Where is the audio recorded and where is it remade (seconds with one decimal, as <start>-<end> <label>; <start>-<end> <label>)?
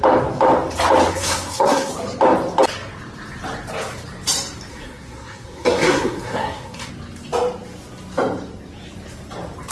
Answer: 0.0-1.1 recorded; 1.1-1.9 remade; 1.9-4.7 recorded; 4.7-6.9 remade; 6.9-9.7 recorded